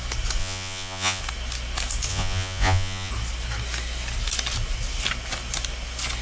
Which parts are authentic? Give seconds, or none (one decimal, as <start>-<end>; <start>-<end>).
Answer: 0.0-0.4; 1.2-2.1; 3.1-6.2